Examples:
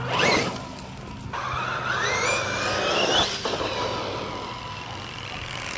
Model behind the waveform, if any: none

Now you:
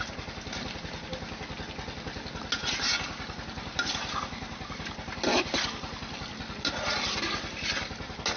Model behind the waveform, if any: none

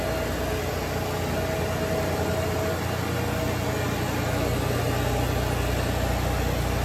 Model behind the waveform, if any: none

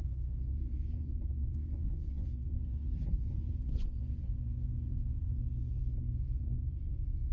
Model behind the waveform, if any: vocoder, Vocos